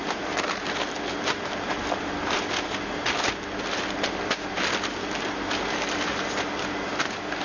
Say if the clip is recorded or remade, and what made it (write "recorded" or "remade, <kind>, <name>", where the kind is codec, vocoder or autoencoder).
recorded